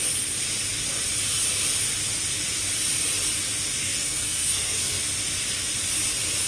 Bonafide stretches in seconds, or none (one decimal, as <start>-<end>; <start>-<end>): 0.0-3.8; 5.0-6.5